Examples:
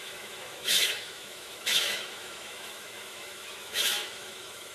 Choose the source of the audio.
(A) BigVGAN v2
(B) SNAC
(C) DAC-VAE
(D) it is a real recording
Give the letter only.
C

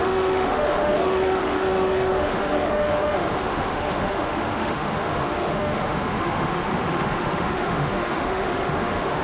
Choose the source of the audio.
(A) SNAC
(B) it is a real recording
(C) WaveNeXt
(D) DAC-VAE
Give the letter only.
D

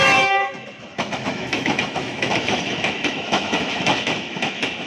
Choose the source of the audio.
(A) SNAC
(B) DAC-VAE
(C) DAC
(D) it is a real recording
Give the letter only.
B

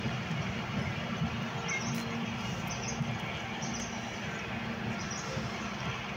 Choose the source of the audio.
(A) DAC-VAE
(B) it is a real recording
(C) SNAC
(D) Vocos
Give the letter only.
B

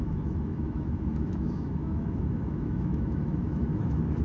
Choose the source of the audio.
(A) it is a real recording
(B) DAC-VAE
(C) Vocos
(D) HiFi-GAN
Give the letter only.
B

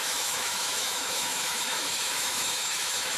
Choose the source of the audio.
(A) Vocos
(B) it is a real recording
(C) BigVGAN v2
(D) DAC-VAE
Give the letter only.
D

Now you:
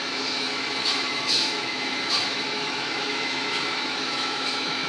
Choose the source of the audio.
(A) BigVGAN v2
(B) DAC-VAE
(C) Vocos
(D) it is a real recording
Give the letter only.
B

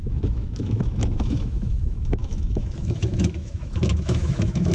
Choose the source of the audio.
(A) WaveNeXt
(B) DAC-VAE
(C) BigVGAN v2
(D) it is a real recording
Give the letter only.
B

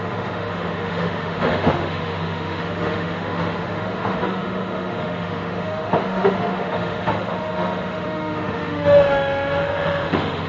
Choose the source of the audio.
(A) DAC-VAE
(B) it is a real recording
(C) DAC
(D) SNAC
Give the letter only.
A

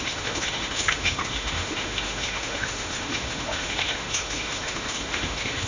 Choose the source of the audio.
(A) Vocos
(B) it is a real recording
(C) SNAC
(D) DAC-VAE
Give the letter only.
D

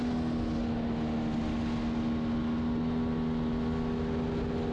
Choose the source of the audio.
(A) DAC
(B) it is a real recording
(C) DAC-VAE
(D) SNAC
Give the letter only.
B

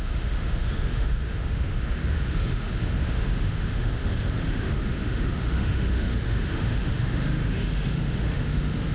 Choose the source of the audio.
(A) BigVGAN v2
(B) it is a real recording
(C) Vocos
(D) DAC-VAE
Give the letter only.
D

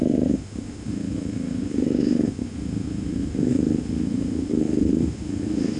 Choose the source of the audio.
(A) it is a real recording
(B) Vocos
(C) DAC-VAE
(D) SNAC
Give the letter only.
C